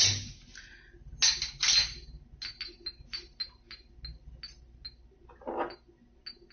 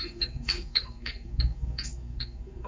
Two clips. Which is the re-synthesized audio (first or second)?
second